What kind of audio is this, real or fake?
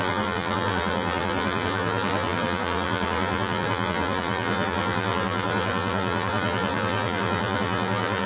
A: fake